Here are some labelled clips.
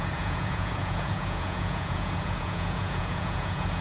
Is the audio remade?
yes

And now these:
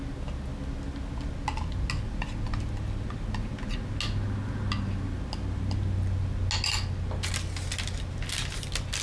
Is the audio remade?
no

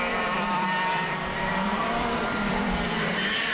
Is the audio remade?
yes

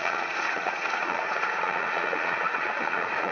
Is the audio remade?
yes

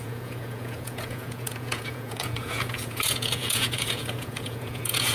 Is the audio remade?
yes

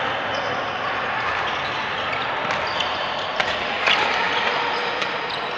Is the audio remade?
no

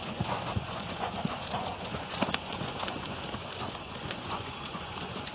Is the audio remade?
yes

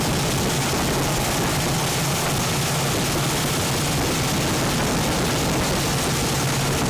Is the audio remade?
no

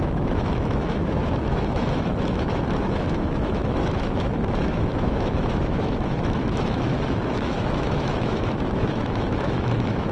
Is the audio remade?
yes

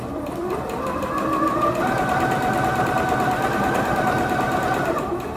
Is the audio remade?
no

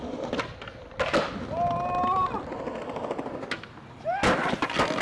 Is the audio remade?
no